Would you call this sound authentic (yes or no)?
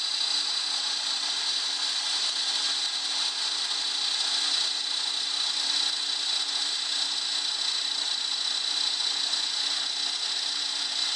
yes